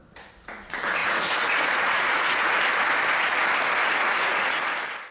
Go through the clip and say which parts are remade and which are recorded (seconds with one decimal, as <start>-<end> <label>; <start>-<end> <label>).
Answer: 0.0-1.0 recorded; 1.0-2.6 remade; 2.6-3.8 recorded; 3.8-4.6 remade; 4.6-5.1 recorded